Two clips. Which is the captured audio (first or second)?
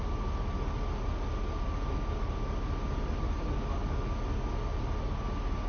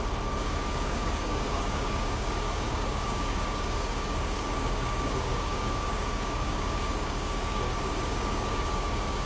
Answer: first